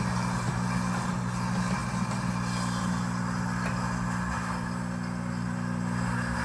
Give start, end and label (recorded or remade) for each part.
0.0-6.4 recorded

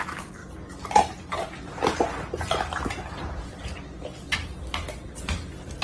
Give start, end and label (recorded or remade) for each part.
0.0-5.8 recorded

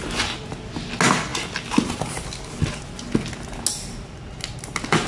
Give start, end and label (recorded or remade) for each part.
0.0-5.1 recorded

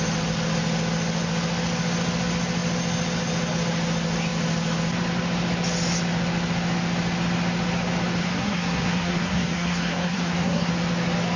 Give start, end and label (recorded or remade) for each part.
0.0-8.2 recorded; 8.2-10.7 remade; 10.7-11.4 recorded

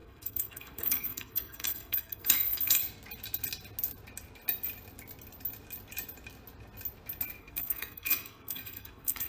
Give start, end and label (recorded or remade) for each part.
0.0-2.8 remade; 2.8-7.4 recorded; 7.4-9.3 remade

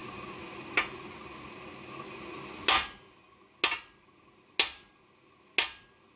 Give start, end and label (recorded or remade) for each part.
0.0-6.2 recorded

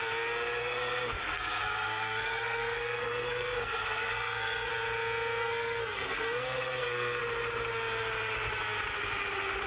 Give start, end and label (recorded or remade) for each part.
0.0-0.6 recorded; 0.6-4.7 remade; 4.7-5.4 recorded; 5.4-7.2 remade; 7.2-9.7 recorded